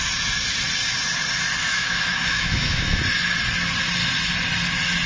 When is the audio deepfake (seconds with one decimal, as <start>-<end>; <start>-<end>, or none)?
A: 1.6-3.0